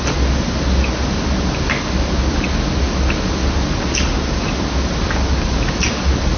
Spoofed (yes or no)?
no